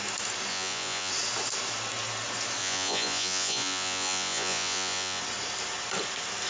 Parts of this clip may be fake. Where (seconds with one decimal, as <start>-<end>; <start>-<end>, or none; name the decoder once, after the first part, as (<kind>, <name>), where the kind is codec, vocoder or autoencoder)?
0.5-1.1 (vocoder, Vocos); 2.6-5.2

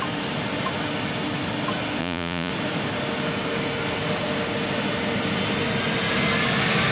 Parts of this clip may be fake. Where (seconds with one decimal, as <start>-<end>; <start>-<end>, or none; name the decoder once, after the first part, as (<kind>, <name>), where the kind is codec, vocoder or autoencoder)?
2.0-2.5 (vocoder, Vocos)

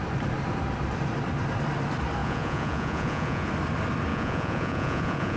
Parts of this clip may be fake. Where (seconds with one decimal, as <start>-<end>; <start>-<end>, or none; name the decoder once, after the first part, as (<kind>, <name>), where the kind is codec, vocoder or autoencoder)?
2.2-3.5 (vocoder, Vocos); 4.1-5.4